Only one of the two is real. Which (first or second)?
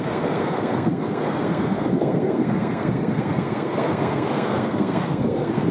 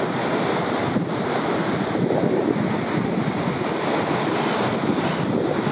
second